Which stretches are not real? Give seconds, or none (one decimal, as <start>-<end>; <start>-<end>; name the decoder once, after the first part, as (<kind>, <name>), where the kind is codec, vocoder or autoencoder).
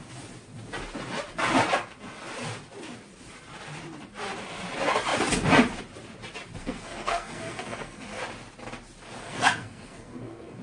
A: 6.6-8.2 (codec, SNAC); 9.2-10.6